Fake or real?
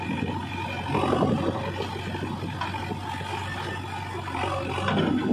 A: real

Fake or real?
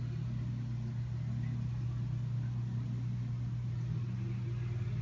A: real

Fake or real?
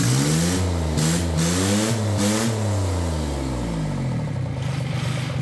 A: real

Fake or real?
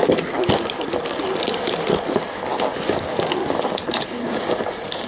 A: real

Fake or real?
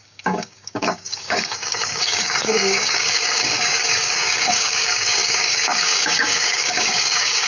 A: fake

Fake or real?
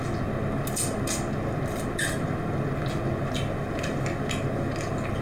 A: real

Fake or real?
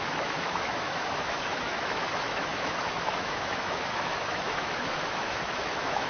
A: fake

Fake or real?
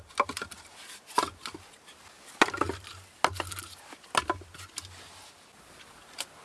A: real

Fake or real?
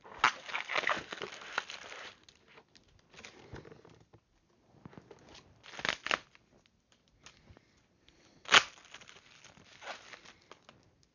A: real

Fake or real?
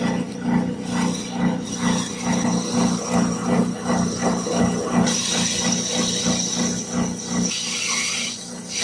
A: real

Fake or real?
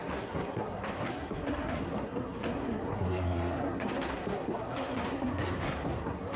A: fake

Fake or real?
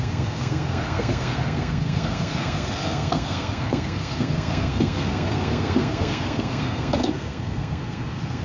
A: fake